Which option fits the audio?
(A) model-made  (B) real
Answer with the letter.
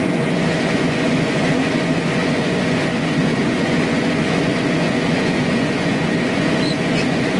A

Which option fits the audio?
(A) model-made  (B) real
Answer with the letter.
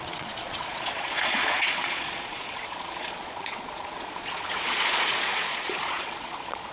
A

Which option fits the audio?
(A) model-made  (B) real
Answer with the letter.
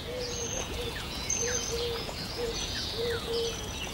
A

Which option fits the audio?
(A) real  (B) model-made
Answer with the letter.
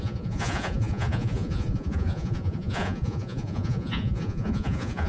B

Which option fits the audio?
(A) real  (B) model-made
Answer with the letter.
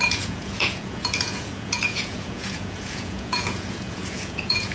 B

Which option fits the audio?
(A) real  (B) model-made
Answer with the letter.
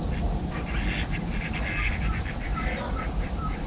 A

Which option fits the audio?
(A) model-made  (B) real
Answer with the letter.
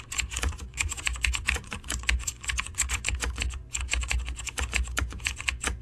A